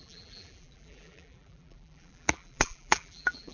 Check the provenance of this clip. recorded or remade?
remade